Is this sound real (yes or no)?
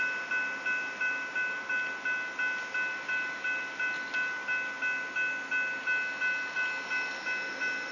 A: yes